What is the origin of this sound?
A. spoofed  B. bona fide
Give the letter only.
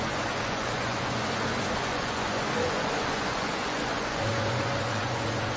A